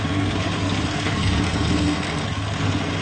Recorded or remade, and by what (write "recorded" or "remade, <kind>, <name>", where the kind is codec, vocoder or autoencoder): remade, codec, SNAC